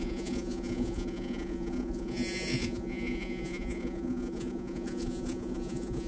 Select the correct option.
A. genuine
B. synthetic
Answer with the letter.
B